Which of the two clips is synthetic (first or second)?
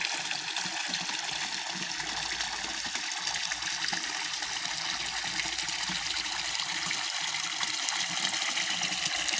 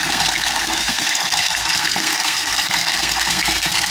second